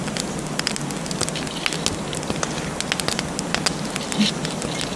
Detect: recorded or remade recorded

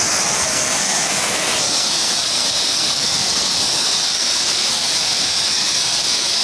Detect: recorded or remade remade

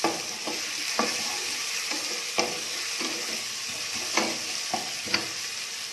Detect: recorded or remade recorded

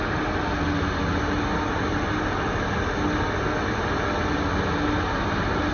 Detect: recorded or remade recorded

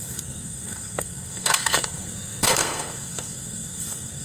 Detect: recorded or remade remade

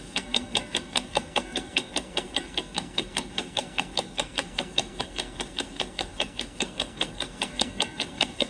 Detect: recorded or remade remade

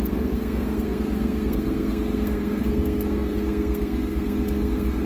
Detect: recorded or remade remade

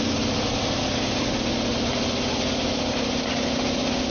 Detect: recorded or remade recorded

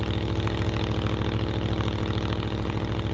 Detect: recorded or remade recorded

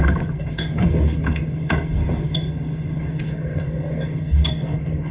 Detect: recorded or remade remade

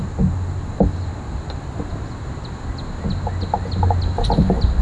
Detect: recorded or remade recorded